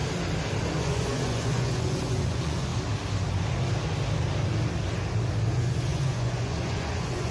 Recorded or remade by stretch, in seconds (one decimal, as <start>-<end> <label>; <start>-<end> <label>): 0.0-0.8 recorded; 0.8-2.7 remade; 2.7-5.5 recorded; 5.5-7.3 remade